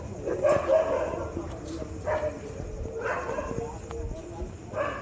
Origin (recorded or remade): recorded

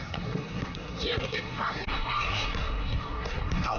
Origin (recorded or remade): remade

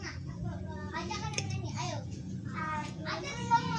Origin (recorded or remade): remade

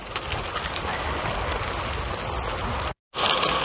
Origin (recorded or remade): recorded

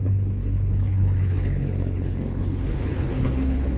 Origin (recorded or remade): remade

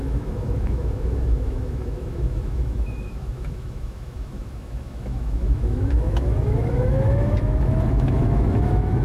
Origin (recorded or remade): remade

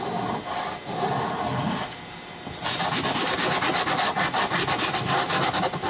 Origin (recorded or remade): recorded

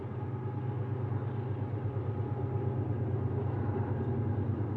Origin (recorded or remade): recorded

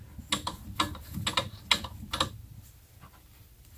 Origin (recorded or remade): recorded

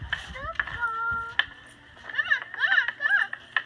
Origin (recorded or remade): recorded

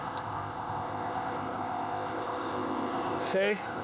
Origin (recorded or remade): remade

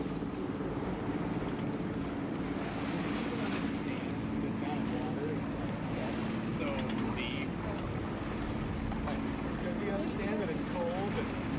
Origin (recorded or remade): recorded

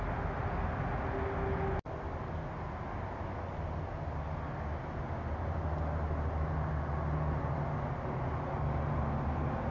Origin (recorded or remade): recorded